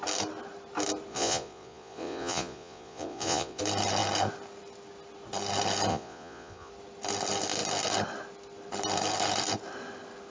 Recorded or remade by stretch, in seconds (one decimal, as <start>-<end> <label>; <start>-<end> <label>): 0.0-1.1 recorded; 1.1-3.6 remade; 3.6-5.9 recorded; 5.9-6.7 remade; 6.7-10.3 recorded